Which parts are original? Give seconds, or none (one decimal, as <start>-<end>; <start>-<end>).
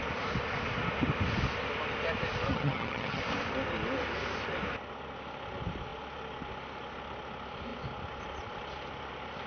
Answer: 0.0-2.5; 3.2-9.5